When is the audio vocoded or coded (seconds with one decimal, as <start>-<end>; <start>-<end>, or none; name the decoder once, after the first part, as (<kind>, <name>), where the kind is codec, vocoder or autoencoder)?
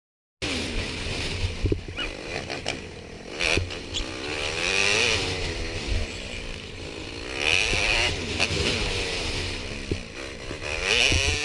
none